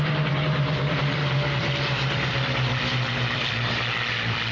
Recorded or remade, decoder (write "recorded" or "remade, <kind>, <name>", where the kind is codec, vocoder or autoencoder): remade, vocoder, BigVGAN v2